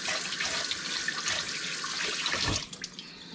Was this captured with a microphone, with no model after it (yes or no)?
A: yes